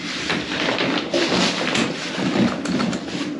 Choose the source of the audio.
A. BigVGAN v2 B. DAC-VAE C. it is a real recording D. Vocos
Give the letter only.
C